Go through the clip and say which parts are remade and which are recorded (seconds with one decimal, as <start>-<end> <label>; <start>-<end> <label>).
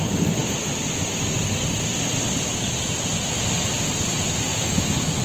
0.0-4.5 recorded; 4.5-5.2 remade